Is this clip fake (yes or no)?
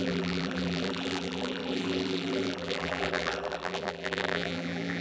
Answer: yes